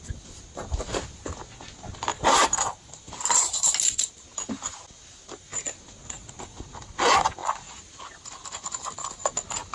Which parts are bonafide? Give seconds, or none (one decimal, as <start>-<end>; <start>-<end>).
0.0-2.1; 4.5-5.5; 6.3-9.7